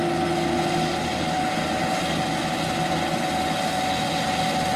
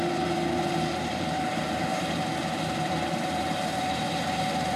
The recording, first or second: first